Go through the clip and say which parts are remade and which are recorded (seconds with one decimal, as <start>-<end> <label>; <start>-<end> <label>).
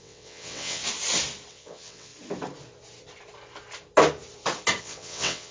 0.0-0.8 remade; 0.8-1.5 recorded; 1.5-2.1 remade; 2.1-4.8 recorded; 4.8-5.5 remade